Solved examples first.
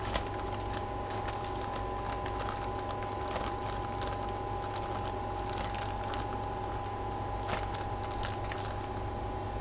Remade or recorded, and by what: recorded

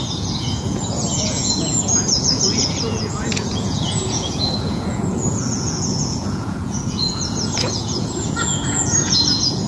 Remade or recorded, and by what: remade, vocoder, Vocos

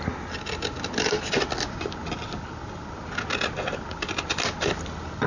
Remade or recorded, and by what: recorded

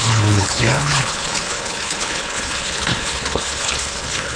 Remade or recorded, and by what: remade, codec, HILCodec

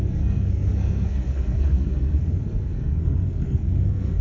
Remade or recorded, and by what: remade, codec, SNAC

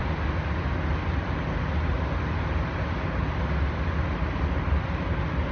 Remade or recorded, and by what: recorded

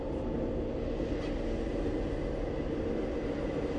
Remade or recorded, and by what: recorded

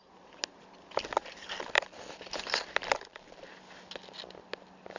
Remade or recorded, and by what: recorded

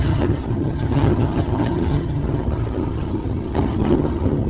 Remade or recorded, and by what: remade, vocoder, HiFi-GAN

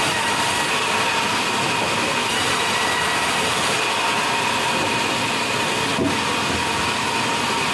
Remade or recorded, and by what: recorded